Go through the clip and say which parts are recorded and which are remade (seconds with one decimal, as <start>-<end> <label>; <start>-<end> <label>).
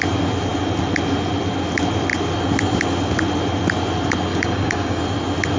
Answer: 0.0-4.3 recorded; 4.3-5.0 remade; 5.0-5.6 recorded